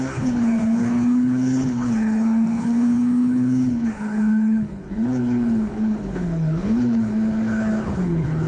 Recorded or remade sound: remade